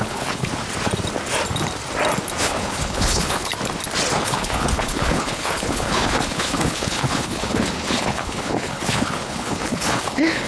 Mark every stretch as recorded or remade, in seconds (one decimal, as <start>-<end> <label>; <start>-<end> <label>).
0.0-0.5 remade; 0.5-2.4 recorded; 2.4-3.5 remade; 3.5-4.2 recorded; 4.2-10.5 remade